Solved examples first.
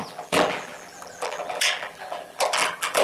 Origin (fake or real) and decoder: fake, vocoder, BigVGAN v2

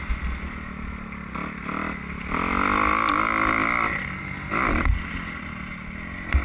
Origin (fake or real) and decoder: real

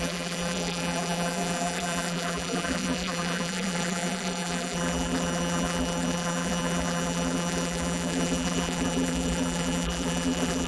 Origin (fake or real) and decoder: fake, vocoder, BigVGAN v2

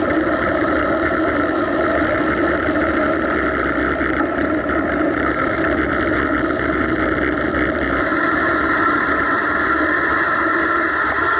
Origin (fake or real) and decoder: fake, vocoder, BigVGAN v2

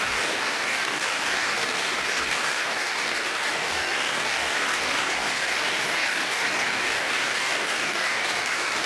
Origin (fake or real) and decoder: fake, codec, DAC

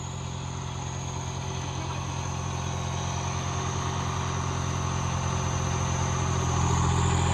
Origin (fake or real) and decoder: real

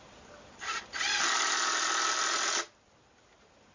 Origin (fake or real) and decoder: real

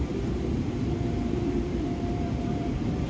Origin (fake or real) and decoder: fake, vocoder, BigVGAN v2